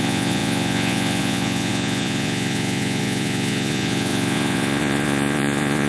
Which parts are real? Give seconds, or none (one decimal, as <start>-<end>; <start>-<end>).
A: none